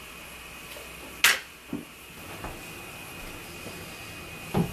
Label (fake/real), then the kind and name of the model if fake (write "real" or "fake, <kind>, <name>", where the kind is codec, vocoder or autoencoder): real